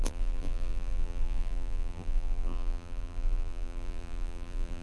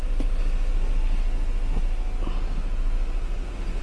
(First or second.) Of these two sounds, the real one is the second